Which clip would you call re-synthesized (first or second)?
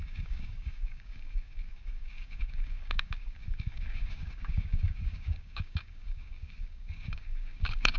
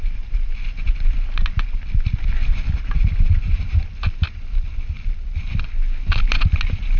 first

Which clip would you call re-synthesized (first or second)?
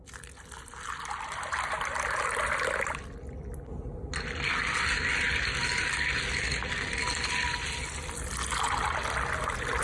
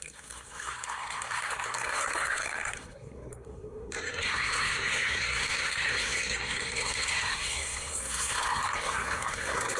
second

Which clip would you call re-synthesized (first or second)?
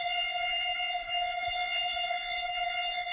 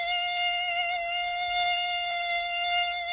first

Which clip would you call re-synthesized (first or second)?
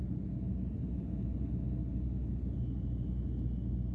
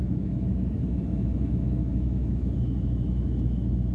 second